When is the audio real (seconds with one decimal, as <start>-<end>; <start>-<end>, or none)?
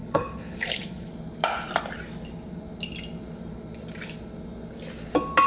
1.1-5.5